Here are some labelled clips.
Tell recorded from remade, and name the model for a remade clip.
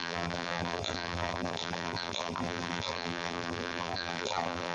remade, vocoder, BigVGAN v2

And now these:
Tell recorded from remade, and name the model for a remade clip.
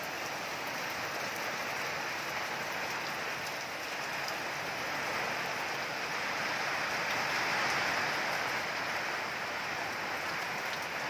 recorded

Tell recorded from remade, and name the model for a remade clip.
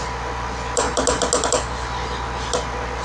recorded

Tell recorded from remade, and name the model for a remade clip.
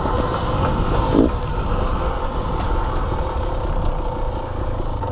recorded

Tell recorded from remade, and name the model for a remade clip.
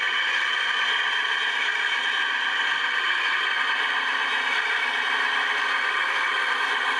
recorded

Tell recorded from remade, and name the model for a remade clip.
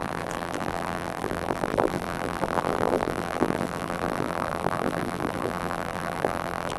remade, vocoder, BigVGAN v2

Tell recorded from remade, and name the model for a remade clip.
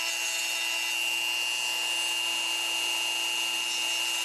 recorded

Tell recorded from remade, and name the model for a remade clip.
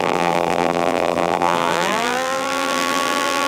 remade, vocoder, BigVGAN v2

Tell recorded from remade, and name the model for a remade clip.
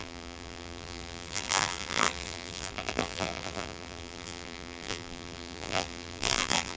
remade, vocoder, BigVGAN v2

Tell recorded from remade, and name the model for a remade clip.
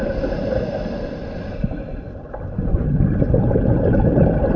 remade, vocoder, BigVGAN v2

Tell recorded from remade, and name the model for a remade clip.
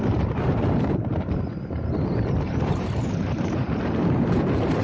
remade, vocoder, BigVGAN v2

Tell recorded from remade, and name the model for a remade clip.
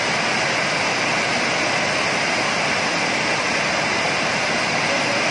recorded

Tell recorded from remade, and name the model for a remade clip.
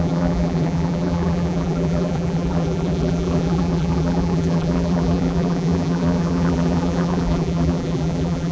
remade, vocoder, BigVGAN v2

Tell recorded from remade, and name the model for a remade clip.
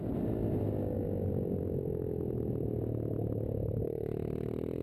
recorded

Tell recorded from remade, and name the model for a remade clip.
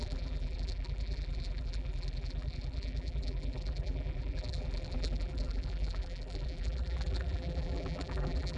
remade, vocoder, BigVGAN v2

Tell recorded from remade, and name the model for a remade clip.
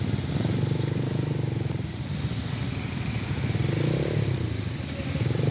recorded